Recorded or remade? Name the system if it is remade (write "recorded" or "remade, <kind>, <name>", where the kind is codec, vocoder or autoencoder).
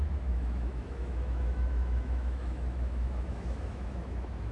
remade, autoencoder, DAC-VAE